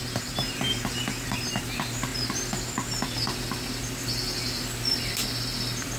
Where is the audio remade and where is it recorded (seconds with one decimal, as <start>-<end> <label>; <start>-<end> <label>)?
0.0-2.1 remade; 2.1-6.0 recorded